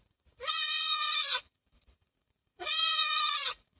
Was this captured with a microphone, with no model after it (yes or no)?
no